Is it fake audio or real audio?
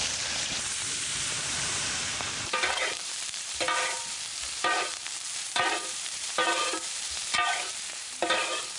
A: fake